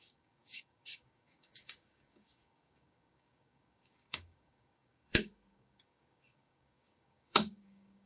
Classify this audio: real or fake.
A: fake